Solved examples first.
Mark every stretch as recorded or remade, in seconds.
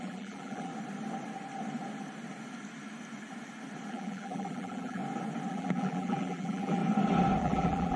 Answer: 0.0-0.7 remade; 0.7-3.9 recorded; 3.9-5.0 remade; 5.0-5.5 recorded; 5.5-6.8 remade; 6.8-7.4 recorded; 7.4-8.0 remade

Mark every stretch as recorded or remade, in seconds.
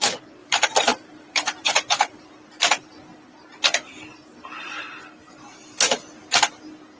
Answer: 0.0-0.4 recorded; 0.4-2.3 remade; 2.3-7.0 recorded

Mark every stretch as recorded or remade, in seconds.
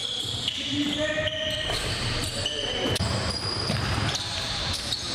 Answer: 0.0-0.6 recorded; 0.6-5.1 remade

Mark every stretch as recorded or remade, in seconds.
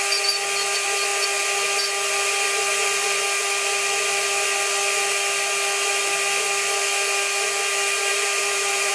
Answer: 0.0-8.1 recorded; 8.1-8.9 remade